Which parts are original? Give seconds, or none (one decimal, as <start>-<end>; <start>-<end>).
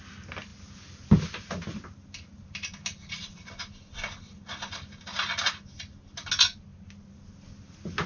0.0-8.1